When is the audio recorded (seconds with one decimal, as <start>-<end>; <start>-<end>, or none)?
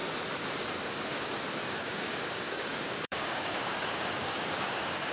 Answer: 0.0-1.8